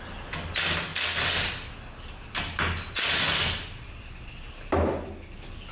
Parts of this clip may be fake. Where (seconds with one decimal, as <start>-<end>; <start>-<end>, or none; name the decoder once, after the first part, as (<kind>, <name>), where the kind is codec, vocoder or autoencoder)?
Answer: none

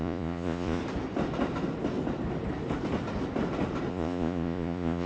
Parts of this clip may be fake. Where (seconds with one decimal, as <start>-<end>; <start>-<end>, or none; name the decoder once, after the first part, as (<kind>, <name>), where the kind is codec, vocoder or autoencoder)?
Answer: 0.0-0.8 (vocoder, Vocos); 3.9-5.1

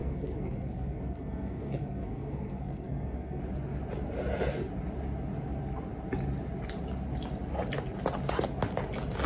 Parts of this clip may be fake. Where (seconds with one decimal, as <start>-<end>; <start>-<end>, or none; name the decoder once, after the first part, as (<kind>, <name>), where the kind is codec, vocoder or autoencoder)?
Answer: 0.0-3.4 (codec, SNAC)